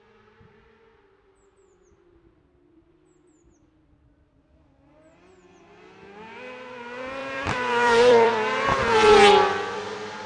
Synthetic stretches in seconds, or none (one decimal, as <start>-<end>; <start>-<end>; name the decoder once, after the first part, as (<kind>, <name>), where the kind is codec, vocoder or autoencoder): 7.2-8.3 (vocoder, BigVGAN v2)